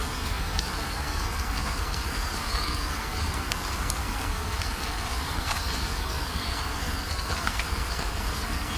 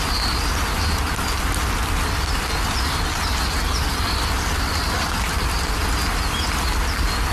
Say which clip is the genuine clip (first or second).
second